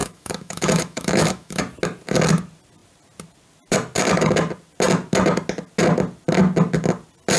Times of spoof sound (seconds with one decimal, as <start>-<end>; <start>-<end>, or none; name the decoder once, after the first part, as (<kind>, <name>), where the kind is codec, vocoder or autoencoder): 0.0-1.6 (autoencoder, DAC-VAE)